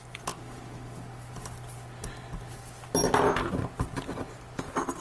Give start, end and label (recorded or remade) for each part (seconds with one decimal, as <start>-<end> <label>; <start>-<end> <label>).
0.0-5.0 recorded